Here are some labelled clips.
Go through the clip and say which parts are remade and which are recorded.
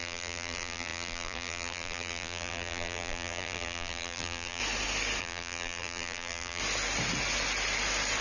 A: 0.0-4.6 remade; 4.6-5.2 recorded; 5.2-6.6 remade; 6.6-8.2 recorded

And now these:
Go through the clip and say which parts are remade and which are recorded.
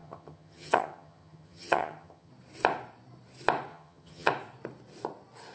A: 0.0-2.3 remade; 2.3-3.7 recorded; 3.7-4.3 remade; 4.3-5.5 recorded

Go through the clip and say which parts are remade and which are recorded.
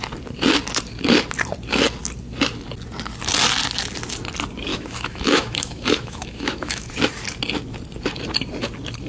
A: 0.0-4.7 recorded; 4.7-6.9 remade; 6.9-9.1 recorded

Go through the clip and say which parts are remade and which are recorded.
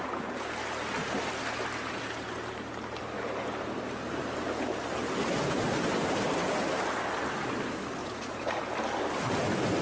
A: 0.0-8.0 recorded; 8.0-8.6 remade; 8.6-9.8 recorded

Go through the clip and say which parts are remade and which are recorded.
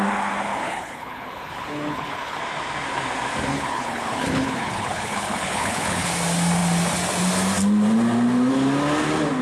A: 0.0-0.5 recorded; 0.5-2.4 remade; 2.4-3.5 recorded; 3.5-6.1 remade; 6.1-9.4 recorded